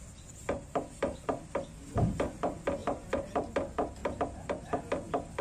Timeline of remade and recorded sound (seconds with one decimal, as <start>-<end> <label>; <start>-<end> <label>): 0.0-0.4 recorded; 0.4-1.3 remade; 1.3-2.8 recorded; 2.8-3.5 remade; 3.5-5.4 recorded